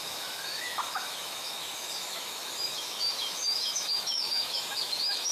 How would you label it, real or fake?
fake